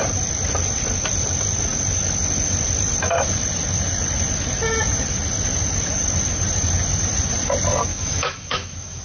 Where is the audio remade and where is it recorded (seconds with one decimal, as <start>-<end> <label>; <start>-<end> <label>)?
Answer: 0.0-7.9 recorded; 7.9-9.0 remade

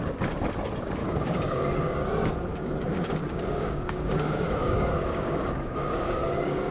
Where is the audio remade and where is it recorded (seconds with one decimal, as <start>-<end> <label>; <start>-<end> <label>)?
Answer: 0.0-1.0 recorded; 1.0-2.1 remade; 2.1-2.5 recorded; 2.5-6.7 remade

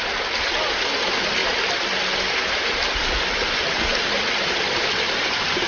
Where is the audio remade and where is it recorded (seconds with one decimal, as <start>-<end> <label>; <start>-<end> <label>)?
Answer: 0.0-5.7 recorded

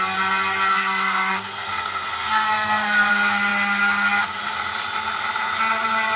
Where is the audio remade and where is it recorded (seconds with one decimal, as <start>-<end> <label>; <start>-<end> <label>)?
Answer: 0.0-0.7 recorded; 0.7-3.1 remade; 3.1-6.2 recorded

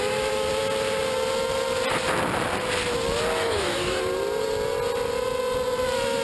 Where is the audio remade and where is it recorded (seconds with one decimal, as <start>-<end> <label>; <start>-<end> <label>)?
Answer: 0.0-3.4 recorded; 3.4-4.0 remade; 4.0-6.2 recorded